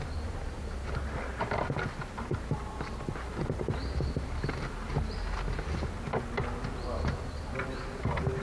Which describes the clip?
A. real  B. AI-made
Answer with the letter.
A